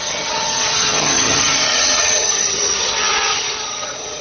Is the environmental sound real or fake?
fake